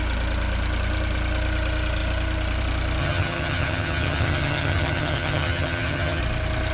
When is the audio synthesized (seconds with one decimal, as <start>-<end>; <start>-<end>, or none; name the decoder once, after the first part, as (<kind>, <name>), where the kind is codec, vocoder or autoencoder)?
3.0-6.2 (vocoder, HiFi-GAN)

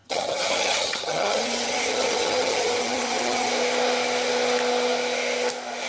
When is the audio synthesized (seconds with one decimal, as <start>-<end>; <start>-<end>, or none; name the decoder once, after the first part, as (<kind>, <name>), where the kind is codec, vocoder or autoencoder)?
0.0-3.5 (vocoder, HiFi-GAN)

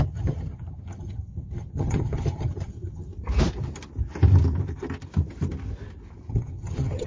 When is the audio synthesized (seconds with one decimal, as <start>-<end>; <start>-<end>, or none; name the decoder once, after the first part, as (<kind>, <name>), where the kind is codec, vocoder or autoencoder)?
0.0-3.1 (vocoder, HiFi-GAN); 6.3-7.1

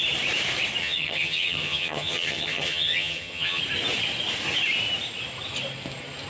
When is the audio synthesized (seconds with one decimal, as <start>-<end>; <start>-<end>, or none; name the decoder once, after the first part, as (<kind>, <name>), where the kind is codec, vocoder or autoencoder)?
0.8-3.6 (vocoder, HiFi-GAN)

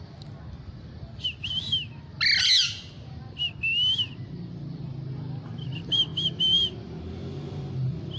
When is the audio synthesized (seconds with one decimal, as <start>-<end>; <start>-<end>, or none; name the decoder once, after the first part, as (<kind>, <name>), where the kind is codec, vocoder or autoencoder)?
none